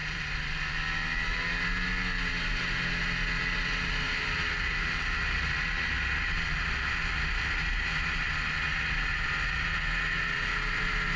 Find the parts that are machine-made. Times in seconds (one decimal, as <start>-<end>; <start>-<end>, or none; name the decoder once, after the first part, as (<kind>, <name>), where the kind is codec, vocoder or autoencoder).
0.0-0.6 (vocoder, BigVGAN v2)

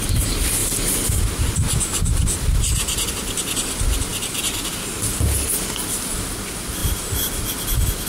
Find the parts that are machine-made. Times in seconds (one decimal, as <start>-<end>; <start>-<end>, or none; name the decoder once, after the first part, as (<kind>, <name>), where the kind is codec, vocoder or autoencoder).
0.6-1.5 (vocoder, BigVGAN v2); 4.1-4.7; 6.8-7.5

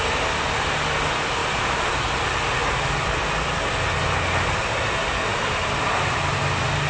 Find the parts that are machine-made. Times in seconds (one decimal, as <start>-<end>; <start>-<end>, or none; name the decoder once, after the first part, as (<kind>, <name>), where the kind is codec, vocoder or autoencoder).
1.4-1.9 (vocoder, BigVGAN v2); 5.3-6.4

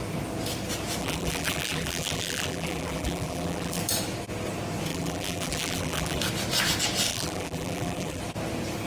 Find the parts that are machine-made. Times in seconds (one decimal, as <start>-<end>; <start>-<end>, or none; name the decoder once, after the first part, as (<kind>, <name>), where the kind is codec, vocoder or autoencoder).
1.0-3.8 (vocoder, BigVGAN v2); 4.9-6.2; 7.1-8.2

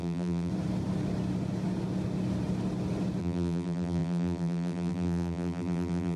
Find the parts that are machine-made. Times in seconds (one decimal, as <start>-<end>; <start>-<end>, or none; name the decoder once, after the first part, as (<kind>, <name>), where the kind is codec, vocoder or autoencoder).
0.0-0.5 (vocoder, BigVGAN v2); 3.2-6.2

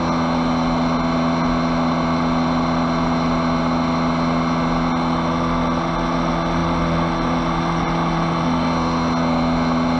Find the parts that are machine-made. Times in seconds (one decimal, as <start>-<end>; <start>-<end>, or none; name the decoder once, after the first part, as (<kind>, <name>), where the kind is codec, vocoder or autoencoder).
none

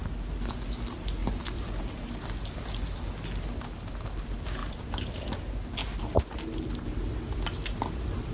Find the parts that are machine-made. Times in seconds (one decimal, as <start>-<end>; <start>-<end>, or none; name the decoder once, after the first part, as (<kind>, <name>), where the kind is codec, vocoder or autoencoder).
1.2-1.8 (vocoder, BigVGAN v2); 4.6-5.3

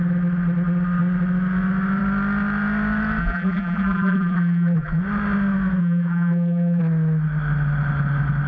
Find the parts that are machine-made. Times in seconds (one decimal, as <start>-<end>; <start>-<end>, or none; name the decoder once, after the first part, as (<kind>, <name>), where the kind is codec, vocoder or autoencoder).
3.2-5.0 (vocoder, BigVGAN v2); 5.8-6.8